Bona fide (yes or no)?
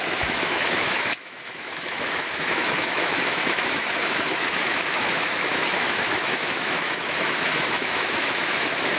no